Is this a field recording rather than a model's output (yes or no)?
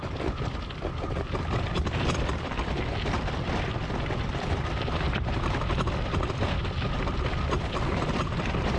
no